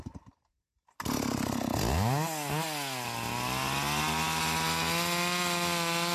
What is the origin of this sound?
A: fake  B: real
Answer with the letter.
B